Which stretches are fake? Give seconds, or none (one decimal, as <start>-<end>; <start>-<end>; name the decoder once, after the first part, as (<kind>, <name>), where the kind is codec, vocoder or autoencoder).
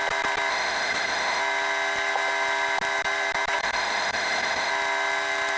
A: 0.5-1.4 (autoencoder, DAC-VAE); 3.6-4.7